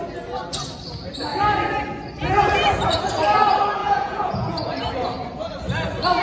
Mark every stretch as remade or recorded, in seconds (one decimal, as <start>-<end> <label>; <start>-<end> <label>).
0.0-3.8 recorded; 3.8-4.8 remade; 4.8-6.2 recorded